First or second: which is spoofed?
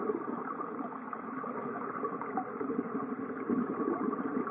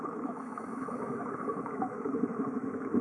second